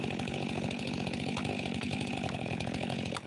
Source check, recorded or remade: remade